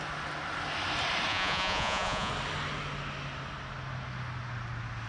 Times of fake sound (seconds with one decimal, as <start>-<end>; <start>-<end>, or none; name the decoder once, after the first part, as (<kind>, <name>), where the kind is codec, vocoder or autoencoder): 1.3-2.3 (vocoder, Vocos)